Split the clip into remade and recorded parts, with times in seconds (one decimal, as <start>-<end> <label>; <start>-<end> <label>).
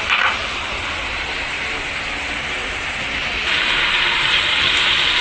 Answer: 0.0-0.4 remade; 0.4-3.5 recorded; 3.5-5.2 remade